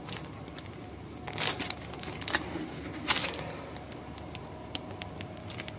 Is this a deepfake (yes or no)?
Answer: no